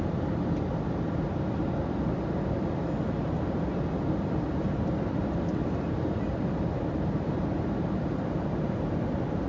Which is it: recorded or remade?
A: recorded